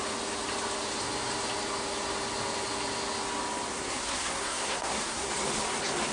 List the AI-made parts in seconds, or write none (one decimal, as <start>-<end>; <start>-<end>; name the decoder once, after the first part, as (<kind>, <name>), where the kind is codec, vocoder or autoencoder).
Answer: 3.7-5.3 (codec, SNAC)